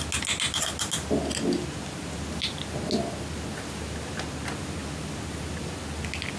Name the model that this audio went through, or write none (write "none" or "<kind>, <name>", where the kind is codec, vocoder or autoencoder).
none